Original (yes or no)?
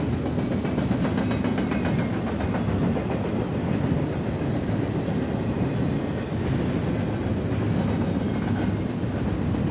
yes